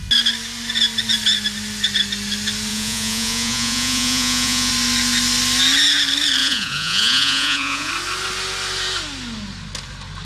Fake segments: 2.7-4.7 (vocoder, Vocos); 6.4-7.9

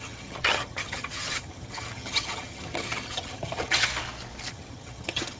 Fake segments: 0.0-3.9 (vocoder, HiFi-GAN); 4.5-5.4

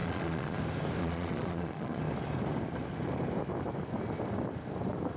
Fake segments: 0.0-0.6 (vocoder, Vocos); 1.0-2.0

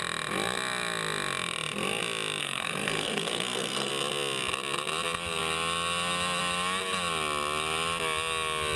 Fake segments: 2.4-3.9 (codec, SNAC)

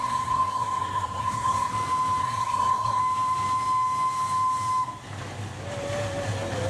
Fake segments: 0.0-1.7 (codec, SNAC); 2.2-3.0